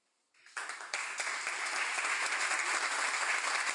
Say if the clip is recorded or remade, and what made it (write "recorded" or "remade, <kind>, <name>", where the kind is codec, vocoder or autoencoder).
recorded